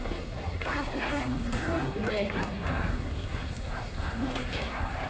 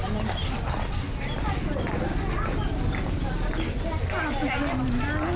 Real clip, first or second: second